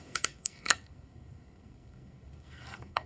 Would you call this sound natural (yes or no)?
no